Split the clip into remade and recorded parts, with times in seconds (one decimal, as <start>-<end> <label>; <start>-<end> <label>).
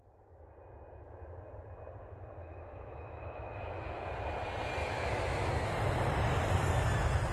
0.0-2.4 recorded; 2.4-4.1 remade; 4.1-4.8 recorded; 4.8-5.5 remade; 5.5-7.3 recorded